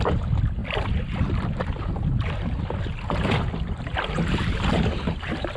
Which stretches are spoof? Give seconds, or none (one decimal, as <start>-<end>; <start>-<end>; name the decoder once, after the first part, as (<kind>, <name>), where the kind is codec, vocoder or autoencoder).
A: none